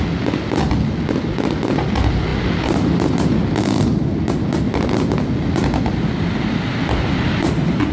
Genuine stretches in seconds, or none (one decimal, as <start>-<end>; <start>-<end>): 0.0-7.9